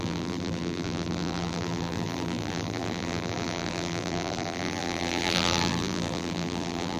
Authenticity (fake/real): fake